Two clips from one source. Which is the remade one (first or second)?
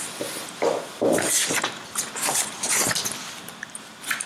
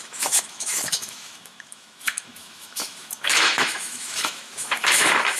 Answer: second